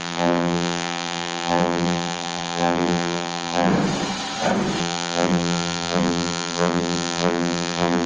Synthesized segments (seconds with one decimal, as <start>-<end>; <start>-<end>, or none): 0.0-3.7; 4.8-8.1

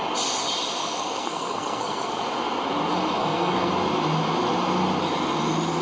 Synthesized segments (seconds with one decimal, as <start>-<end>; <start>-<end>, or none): 0.8-2.2; 3.2-3.7